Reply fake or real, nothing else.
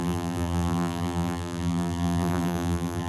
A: fake